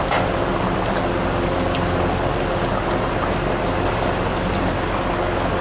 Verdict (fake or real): real